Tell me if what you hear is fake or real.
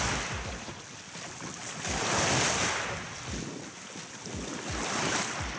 real